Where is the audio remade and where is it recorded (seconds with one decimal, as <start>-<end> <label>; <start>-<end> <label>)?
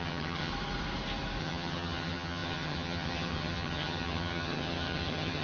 0.0-0.5 remade; 0.5-1.4 recorded; 1.4-5.4 remade